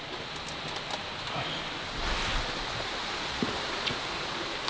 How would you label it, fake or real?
real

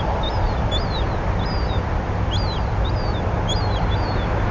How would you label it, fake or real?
real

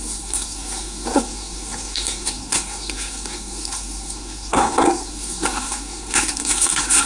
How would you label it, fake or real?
fake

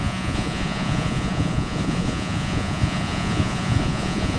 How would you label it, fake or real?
fake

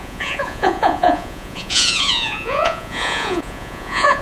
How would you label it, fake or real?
fake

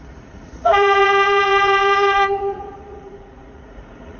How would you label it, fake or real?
fake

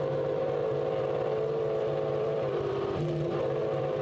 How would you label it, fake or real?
fake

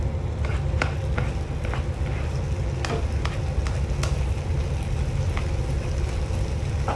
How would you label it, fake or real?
real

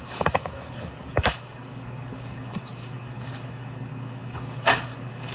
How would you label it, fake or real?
fake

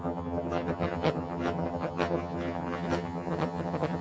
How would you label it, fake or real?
fake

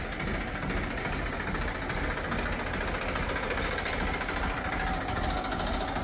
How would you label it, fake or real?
real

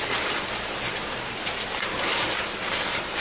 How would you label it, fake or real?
real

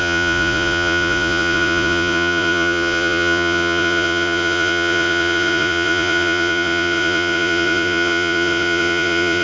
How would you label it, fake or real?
fake